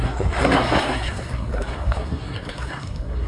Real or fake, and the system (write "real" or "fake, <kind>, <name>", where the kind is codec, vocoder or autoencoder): fake, codec, SNAC